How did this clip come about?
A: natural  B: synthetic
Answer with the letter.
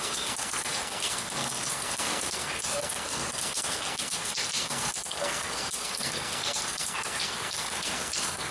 B